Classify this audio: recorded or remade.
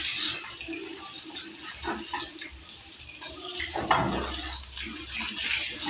recorded